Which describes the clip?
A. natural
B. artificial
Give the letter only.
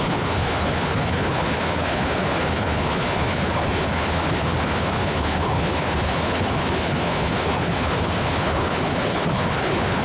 B